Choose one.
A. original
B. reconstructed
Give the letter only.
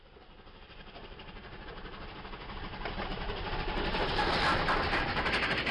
A